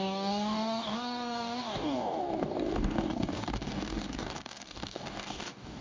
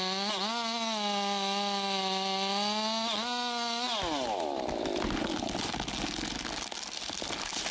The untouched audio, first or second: second